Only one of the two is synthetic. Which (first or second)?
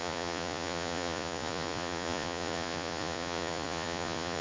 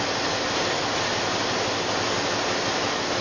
first